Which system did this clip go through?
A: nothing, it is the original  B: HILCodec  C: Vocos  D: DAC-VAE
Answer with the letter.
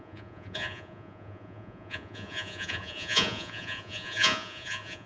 C